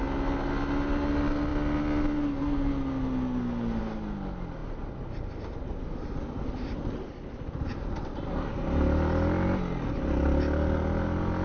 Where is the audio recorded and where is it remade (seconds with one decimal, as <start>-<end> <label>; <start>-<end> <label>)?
0.0-11.4 recorded